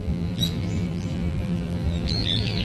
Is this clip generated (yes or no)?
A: yes